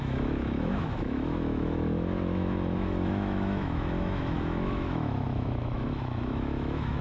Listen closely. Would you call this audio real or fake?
fake